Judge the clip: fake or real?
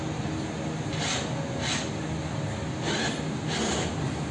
real